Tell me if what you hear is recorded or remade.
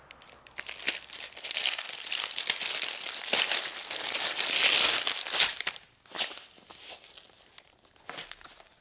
recorded